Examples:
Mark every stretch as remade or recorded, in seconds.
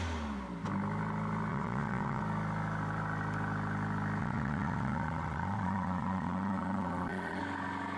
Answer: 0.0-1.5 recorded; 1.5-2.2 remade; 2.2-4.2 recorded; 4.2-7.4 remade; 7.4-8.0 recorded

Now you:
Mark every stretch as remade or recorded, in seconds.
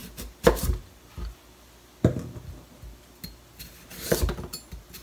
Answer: 0.0-5.0 recorded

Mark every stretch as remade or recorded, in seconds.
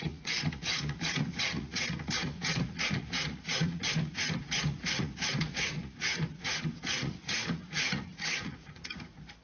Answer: 0.0-9.4 remade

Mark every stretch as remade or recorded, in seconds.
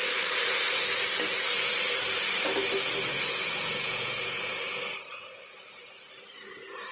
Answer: 0.0-3.1 recorded; 3.1-4.4 remade; 4.4-6.9 recorded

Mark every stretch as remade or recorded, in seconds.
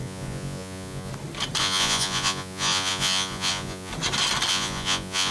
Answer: 0.0-1.1 remade; 1.1-1.6 recorded; 1.6-3.9 remade; 3.9-4.5 recorded; 4.5-5.3 remade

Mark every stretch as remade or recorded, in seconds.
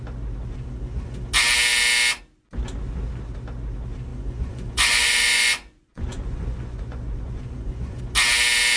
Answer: 0.0-4.1 recorded; 4.1-8.0 remade; 8.0-8.8 recorded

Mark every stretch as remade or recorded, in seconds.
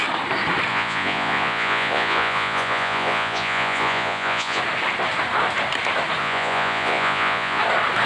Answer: 0.0-0.7 recorded; 0.7-4.6 remade; 4.6-6.2 recorded; 6.2-7.6 remade; 7.6-8.1 recorded